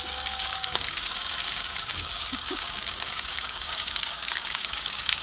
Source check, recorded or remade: remade